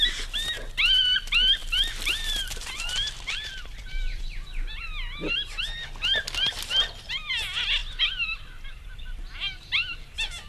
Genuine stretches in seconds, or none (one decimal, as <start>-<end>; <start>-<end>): 0.0-1.6; 4.2-7.8; 9.6-10.5